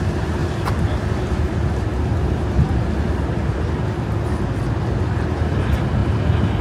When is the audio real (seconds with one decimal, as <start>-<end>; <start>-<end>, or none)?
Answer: 0.0-0.4; 1.7-6.6